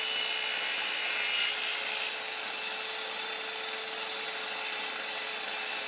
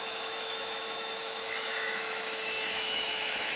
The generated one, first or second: second